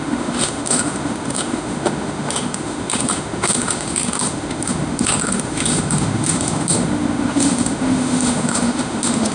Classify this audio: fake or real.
fake